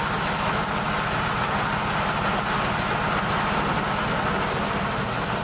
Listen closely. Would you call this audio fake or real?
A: real